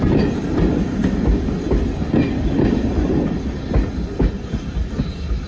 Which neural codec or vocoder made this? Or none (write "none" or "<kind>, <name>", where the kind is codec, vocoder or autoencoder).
none